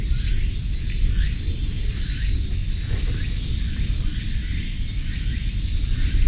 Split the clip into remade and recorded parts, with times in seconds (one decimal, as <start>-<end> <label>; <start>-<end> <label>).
0.0-6.3 recorded